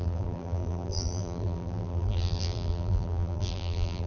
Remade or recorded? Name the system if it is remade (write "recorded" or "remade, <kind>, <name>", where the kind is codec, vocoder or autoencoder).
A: remade, vocoder, BigVGAN v2